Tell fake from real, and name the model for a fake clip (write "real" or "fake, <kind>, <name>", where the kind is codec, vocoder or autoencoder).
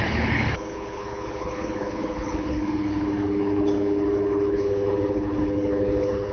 fake, codec, HILCodec